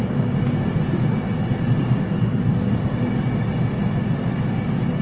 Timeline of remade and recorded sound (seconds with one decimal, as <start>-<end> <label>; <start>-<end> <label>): 0.0-5.0 recorded